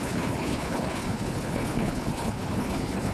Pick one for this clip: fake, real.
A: fake